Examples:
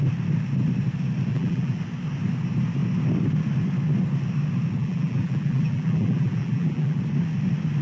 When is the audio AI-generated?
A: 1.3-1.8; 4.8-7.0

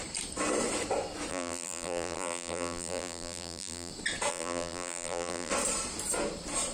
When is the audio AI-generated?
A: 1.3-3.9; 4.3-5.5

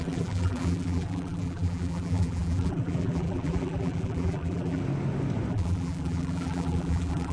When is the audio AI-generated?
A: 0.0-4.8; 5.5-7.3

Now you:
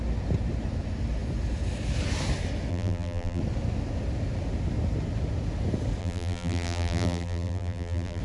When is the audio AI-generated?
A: 2.7-3.4; 6.0-8.2

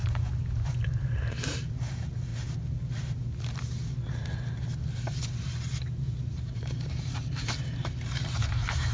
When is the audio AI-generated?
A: 0.0-2.3; 5.4-8.9

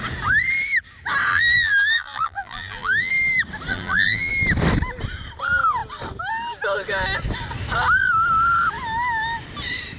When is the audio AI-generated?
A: 1.3-3.1; 3.7-4.3

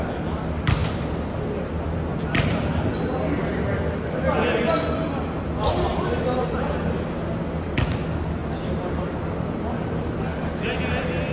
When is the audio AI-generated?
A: none

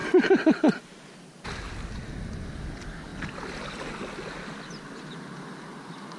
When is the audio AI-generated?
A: none